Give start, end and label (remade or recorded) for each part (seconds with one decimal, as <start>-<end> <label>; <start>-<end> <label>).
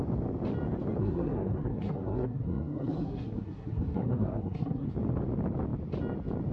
0.0-1.0 recorded; 1.0-4.9 remade; 4.9-6.5 recorded